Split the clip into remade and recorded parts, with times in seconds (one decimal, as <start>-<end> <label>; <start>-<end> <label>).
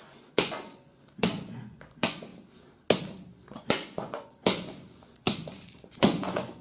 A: 0.0-2.3 remade; 2.3-3.5 recorded; 3.5-6.6 remade